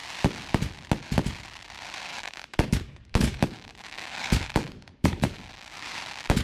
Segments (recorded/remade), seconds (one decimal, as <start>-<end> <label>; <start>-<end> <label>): 0.0-2.1 recorded; 2.1-5.8 remade; 5.8-6.4 recorded